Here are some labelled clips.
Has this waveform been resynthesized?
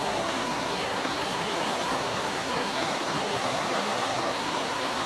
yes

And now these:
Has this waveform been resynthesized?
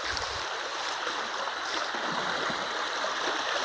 no